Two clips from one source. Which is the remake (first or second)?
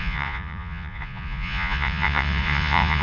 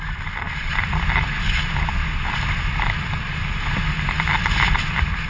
first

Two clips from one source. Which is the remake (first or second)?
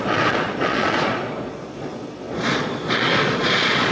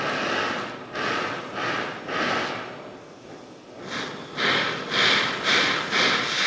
first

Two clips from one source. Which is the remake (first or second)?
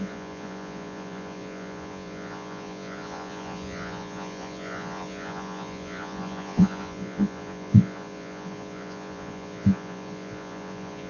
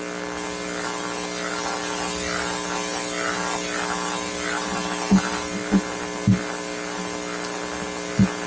first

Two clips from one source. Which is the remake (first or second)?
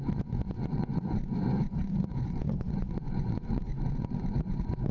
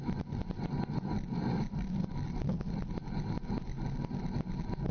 first